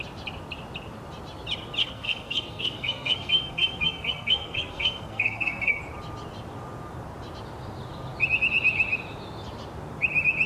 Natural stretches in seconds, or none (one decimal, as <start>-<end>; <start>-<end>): 0.0-1.8; 5.8-10.5